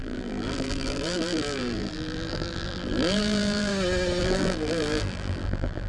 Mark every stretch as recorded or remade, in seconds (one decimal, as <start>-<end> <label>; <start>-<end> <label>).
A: 0.0-3.7 remade; 3.7-4.2 recorded; 4.2-5.9 remade